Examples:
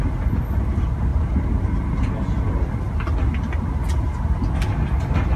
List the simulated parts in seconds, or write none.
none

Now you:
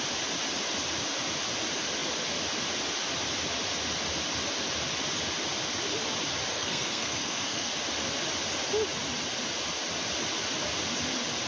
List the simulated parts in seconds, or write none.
6.5-7.7 (codec, SNAC)